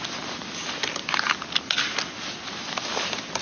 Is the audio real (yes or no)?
yes